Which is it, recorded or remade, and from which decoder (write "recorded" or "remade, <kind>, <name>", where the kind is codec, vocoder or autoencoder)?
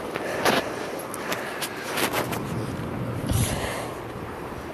recorded